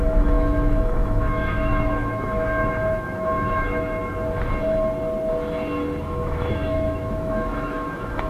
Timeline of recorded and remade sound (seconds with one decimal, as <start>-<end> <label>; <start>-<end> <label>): 0.0-4.0 remade; 4.0-6.0 recorded; 6.0-8.3 remade